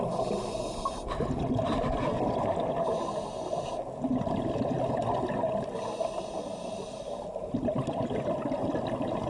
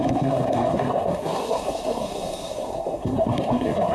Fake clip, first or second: second